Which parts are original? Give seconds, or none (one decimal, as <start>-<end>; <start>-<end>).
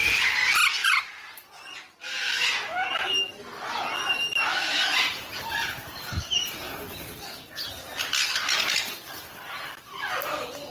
0.0-0.8; 1.5-4.9; 6.5-10.7